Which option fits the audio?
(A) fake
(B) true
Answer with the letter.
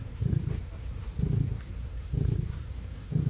A